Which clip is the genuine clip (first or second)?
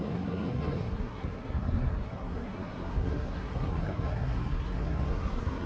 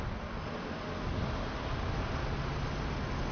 second